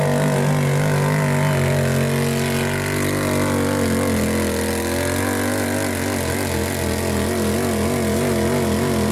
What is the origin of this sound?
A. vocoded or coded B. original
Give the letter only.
B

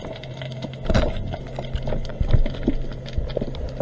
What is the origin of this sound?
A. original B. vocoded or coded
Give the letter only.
A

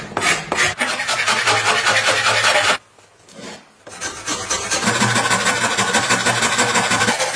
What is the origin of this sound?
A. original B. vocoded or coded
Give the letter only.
A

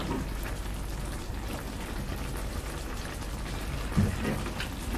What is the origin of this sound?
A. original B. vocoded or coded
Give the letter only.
B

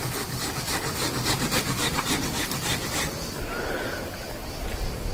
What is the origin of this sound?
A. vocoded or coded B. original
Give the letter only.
B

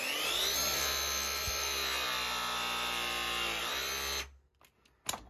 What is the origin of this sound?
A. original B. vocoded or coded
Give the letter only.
A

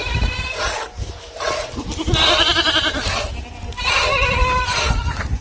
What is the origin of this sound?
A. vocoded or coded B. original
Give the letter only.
A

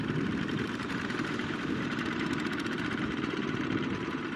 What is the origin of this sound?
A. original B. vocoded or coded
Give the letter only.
B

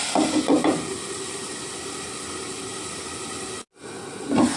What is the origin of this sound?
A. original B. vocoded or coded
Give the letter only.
A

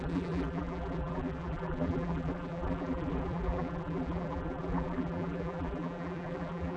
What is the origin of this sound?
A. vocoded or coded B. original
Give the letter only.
A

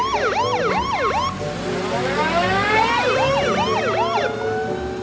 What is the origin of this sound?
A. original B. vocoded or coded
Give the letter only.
A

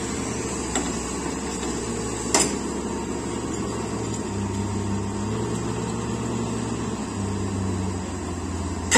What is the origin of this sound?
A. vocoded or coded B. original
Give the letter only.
B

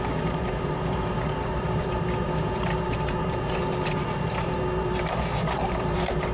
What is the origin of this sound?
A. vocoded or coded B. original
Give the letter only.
A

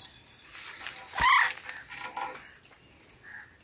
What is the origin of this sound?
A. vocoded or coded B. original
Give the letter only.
B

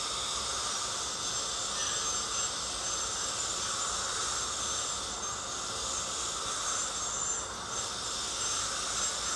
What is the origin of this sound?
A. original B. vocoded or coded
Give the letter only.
A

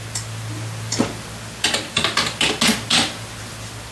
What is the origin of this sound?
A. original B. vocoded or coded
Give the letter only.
A